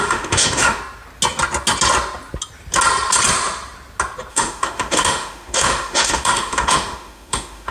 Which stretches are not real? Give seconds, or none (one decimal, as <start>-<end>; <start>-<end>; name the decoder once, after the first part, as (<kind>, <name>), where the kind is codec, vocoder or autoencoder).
0.0-0.8 (autoencoder, DAC-VAE); 4.3-7.7

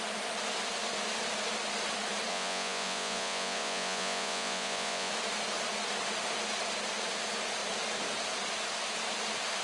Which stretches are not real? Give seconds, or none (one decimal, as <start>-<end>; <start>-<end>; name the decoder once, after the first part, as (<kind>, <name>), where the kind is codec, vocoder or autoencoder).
2.3-5.1 (vocoder, Vocos)

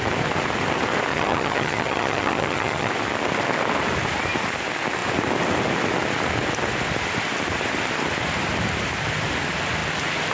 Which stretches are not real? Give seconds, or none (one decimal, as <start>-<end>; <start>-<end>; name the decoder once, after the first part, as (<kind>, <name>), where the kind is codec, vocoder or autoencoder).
1.1-2.9 (vocoder, HiFi-GAN)

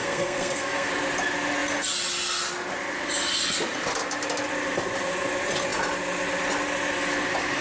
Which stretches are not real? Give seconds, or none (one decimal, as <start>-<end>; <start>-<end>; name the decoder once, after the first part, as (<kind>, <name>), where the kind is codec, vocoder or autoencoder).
0.0-0.9 (codec, SNAC)

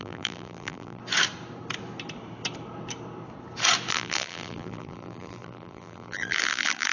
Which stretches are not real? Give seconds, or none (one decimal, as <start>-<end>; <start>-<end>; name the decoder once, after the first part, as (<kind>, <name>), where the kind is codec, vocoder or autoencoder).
0.0-1.0 (vocoder, BigVGAN v2); 3.9-6.9

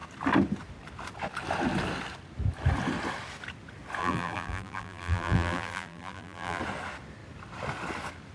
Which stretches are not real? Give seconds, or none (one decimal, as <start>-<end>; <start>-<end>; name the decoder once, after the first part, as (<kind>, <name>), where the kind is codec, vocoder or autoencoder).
4.0-6.6 (vocoder, BigVGAN v2)

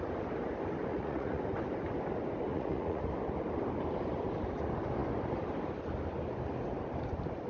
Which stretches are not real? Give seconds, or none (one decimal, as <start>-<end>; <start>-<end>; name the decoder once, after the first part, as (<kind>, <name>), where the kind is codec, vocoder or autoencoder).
0.9-1.4 (vocoder, Vocos); 2.5-3.0

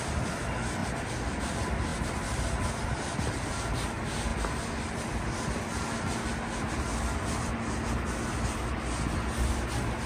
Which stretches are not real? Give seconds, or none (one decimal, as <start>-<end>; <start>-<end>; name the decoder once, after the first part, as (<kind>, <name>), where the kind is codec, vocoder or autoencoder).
none